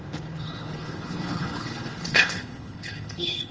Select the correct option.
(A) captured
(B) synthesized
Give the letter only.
B